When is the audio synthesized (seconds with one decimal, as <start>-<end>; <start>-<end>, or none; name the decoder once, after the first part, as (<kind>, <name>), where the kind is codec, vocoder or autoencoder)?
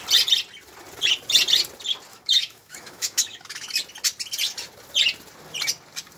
2.1-3.7 (autoencoder, DAC-VAE)